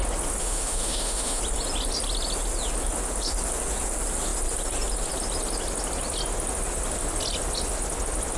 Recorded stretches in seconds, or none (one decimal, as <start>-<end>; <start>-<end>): 0.0-0.4; 1.4-8.4